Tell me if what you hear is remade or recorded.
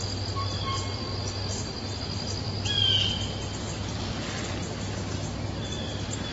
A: recorded